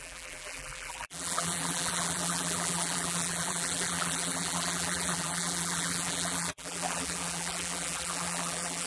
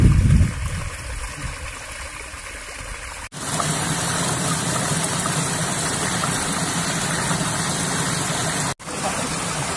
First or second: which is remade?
first